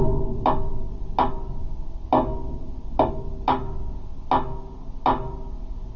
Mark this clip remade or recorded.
recorded